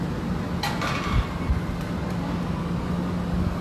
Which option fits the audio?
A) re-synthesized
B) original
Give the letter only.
B